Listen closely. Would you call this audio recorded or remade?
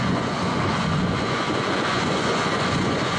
remade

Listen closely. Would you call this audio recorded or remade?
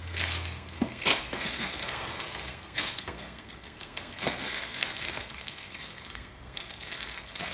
remade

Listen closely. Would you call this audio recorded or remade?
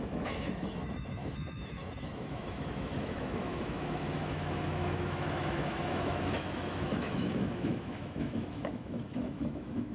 remade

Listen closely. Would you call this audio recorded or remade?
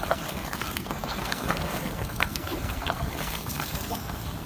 remade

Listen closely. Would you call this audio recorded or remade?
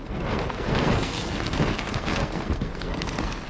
remade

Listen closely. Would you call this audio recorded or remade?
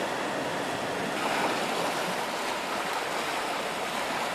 recorded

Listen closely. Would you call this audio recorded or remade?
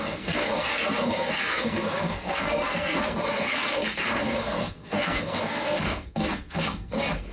remade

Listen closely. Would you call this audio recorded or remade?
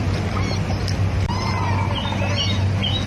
recorded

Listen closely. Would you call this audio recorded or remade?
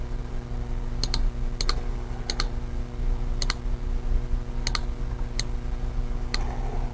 recorded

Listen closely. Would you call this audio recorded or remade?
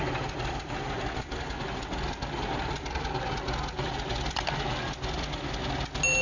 recorded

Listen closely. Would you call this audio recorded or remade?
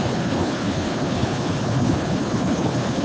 remade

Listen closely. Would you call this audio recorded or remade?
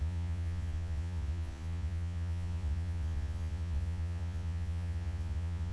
remade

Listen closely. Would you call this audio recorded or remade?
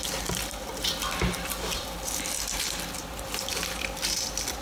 recorded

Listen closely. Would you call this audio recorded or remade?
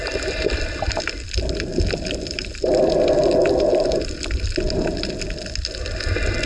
recorded